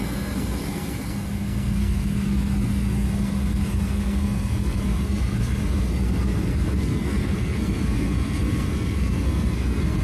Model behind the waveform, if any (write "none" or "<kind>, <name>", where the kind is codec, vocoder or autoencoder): codec, SNAC